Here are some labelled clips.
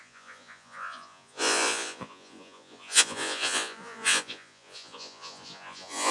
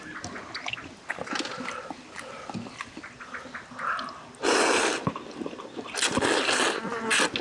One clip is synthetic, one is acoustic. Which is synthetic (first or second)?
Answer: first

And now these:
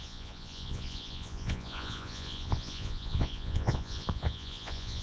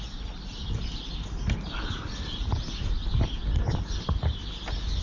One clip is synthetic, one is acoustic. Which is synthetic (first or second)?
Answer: first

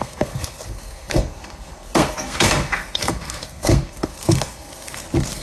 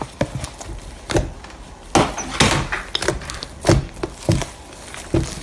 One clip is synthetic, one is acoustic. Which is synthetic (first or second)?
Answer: first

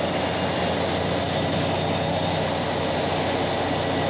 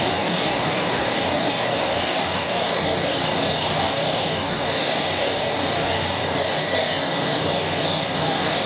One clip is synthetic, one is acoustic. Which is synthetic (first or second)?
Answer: second